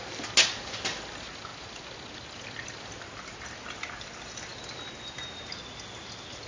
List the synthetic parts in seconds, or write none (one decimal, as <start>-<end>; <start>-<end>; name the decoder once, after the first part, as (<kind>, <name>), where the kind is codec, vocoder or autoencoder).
none